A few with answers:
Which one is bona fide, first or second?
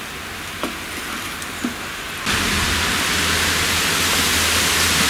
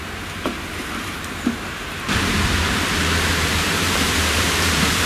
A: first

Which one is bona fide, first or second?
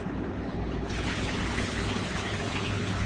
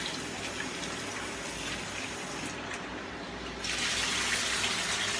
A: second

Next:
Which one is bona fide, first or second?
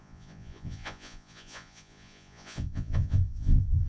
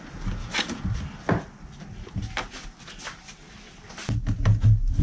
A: second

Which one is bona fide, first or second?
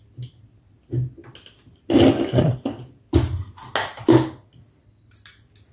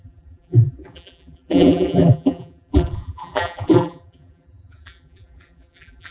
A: first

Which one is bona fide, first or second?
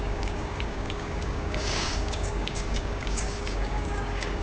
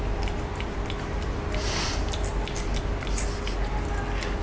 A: second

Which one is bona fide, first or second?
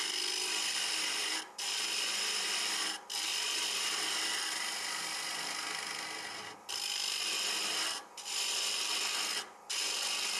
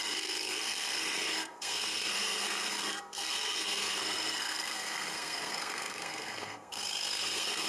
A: first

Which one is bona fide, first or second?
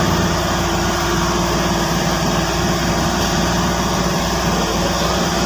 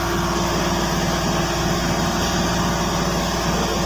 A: second